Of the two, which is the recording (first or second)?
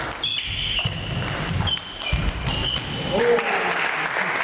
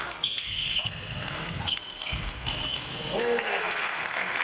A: first